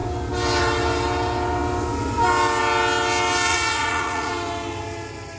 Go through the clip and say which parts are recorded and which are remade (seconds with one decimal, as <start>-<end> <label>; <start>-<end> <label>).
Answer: 0.0-3.5 recorded; 3.5-4.3 remade; 4.3-5.4 recorded